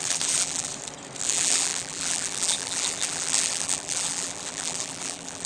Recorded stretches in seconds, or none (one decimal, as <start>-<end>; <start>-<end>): 0.7-1.2